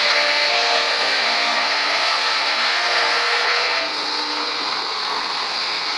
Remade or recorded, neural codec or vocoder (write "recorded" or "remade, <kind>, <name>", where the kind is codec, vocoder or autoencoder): remade, codec, SNAC